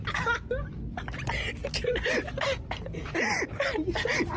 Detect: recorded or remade recorded